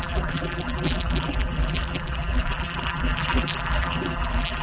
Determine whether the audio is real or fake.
fake